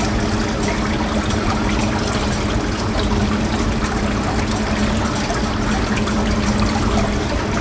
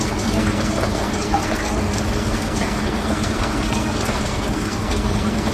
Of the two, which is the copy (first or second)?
second